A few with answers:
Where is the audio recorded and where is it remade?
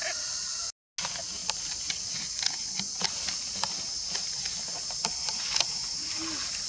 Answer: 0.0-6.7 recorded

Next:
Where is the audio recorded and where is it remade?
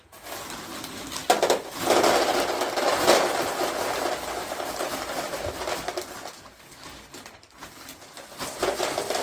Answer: 0.0-4.4 recorded; 4.4-5.9 remade; 5.9-9.2 recorded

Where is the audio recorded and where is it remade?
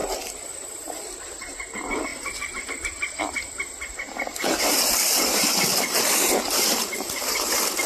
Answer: 0.0-2.1 remade; 2.1-3.2 recorded; 3.2-7.9 remade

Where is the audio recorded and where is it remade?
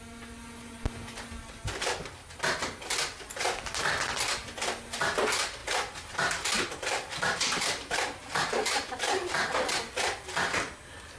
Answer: 0.0-5.6 recorded; 5.6-9.7 remade; 9.7-11.2 recorded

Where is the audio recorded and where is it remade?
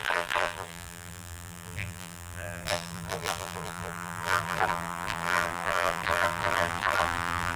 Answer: 0.0-7.6 remade